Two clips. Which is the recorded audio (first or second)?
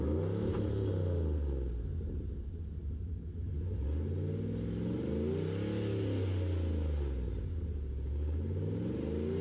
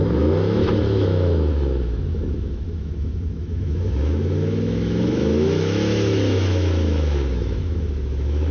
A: first